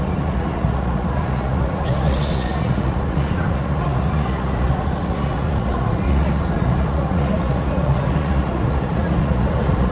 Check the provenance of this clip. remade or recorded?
remade